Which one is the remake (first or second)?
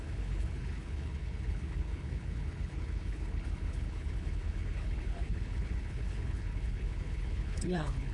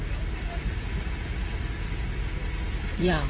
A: first